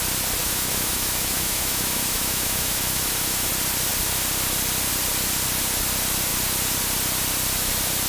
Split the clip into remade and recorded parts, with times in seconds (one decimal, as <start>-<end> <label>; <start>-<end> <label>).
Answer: 0.0-0.4 recorded; 0.4-3.5 remade; 3.5-8.1 recorded

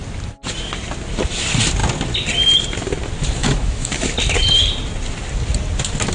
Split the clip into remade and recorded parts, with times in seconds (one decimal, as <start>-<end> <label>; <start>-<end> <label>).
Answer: 0.0-3.4 recorded; 3.4-4.1 remade; 4.1-6.1 recorded